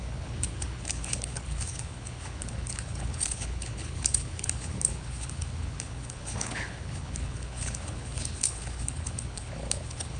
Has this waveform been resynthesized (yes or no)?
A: yes